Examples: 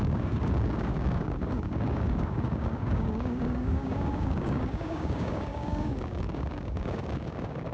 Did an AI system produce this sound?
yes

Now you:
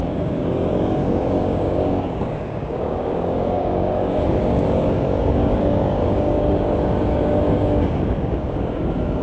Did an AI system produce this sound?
yes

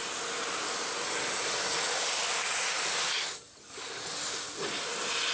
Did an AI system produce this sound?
no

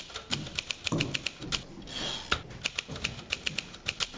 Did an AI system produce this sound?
no